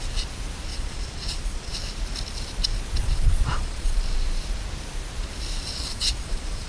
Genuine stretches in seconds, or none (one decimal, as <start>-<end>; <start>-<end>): 0.0-0.7; 1.7-3.0; 4.0-5.9